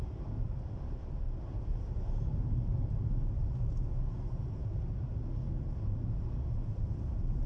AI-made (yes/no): no